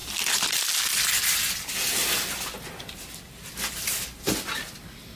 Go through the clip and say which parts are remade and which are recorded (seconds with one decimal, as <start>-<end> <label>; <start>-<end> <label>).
0.0-1.5 remade; 1.5-5.2 recorded